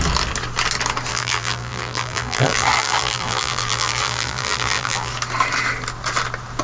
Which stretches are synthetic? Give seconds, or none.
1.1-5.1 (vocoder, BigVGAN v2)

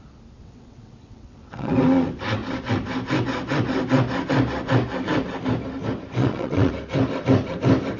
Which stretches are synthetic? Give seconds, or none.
0.4-1.7 (vocoder, WaveNeXt); 6.2-6.7

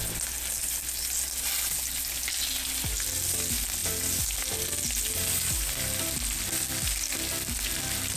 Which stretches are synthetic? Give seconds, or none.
none

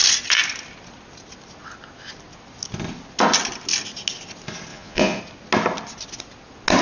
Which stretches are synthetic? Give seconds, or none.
4.7-5.2 (vocoder, Vocos)

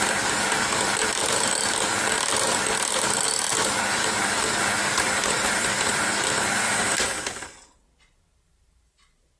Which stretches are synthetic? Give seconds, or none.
none

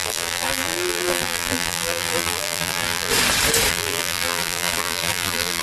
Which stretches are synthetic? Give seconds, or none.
0.0-3.1 (vocoder, BigVGAN v2); 3.7-5.6

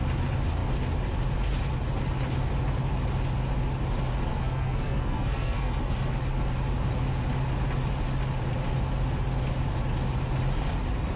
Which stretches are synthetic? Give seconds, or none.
4.3-6.2 (codec, SNAC)